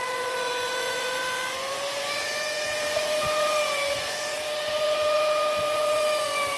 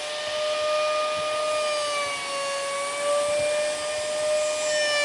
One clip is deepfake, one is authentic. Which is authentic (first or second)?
second